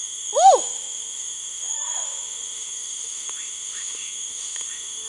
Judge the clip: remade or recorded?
remade